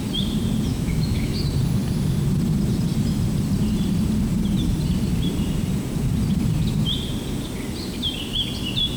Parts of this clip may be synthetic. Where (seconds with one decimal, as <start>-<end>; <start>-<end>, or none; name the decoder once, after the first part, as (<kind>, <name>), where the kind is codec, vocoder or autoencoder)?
0.7-1.3 (autoencoder, DAC-VAE)